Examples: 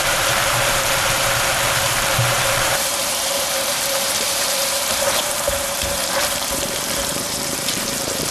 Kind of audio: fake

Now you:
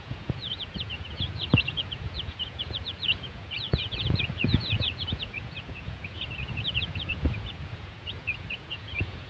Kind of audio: fake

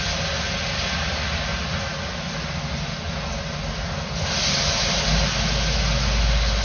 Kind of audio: real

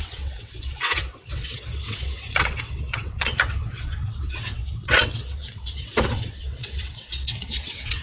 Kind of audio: fake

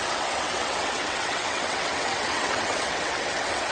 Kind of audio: fake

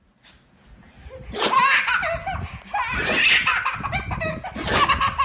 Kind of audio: real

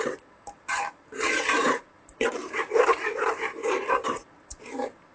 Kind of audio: fake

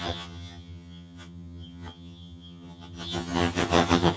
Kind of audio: fake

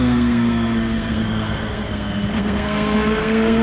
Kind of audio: fake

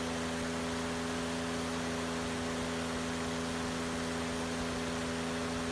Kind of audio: real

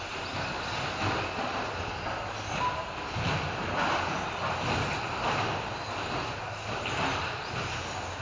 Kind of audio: real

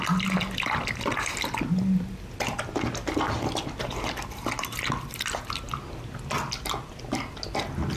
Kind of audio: real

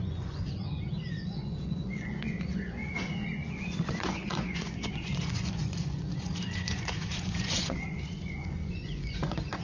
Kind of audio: fake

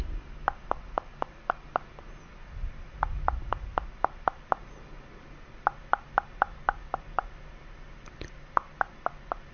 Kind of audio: real